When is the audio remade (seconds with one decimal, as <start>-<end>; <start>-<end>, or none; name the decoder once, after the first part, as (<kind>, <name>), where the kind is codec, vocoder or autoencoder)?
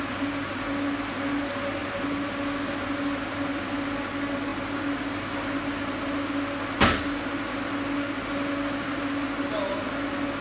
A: none